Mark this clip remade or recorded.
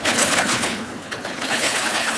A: remade